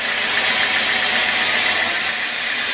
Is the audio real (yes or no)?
yes